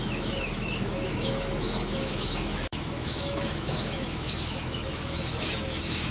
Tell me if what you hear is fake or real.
fake